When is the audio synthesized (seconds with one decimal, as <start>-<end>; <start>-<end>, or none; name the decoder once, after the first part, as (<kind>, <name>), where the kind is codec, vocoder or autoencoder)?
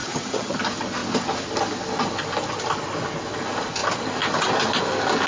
0.0-0.6 (vocoder, HiFi-GAN)